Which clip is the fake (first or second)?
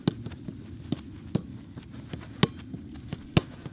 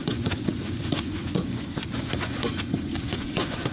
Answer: second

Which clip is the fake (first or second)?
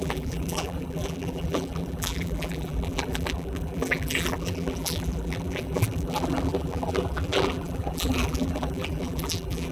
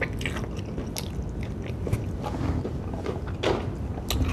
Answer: first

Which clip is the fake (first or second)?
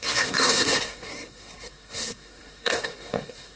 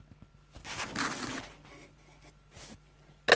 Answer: first